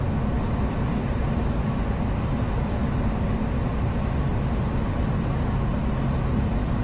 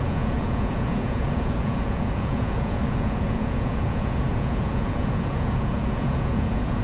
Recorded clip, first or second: first